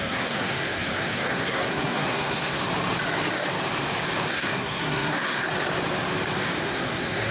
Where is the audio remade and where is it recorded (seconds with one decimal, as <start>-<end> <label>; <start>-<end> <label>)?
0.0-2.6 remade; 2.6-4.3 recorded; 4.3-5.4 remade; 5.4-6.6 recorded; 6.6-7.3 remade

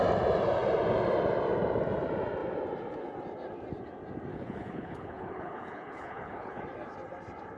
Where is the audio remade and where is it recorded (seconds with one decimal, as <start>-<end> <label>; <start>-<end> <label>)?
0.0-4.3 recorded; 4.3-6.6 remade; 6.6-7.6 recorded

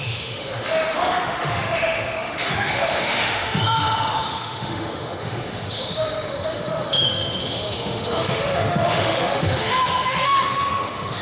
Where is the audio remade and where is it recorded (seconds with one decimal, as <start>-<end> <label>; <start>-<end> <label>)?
0.0-11.2 remade

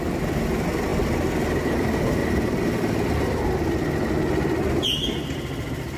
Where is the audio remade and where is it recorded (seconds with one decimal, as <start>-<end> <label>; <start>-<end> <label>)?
0.0-0.9 recorded; 0.9-1.7 remade; 1.7-2.2 recorded; 2.2-3.4 remade; 3.4-6.0 recorded

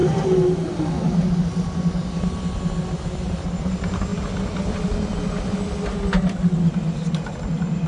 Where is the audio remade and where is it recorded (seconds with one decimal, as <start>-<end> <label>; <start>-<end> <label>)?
0.0-0.8 remade; 0.8-7.9 recorded